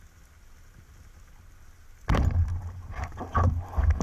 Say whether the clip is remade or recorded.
recorded